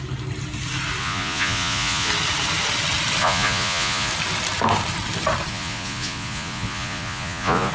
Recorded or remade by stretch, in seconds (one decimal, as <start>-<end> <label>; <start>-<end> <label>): 0.0-1.0 recorded; 1.0-2.1 remade; 2.1-3.2 recorded; 3.2-4.1 remade; 4.1-5.5 recorded; 5.5-7.7 remade